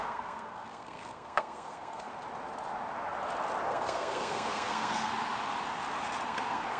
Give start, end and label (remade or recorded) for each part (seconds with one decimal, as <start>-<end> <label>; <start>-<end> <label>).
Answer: 0.0-2.1 remade; 2.1-3.7 recorded; 3.7-5.1 remade; 5.1-6.2 recorded; 6.2-6.8 remade